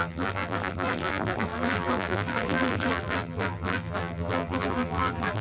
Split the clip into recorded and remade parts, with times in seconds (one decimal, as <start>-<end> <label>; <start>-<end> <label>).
0.0-5.4 remade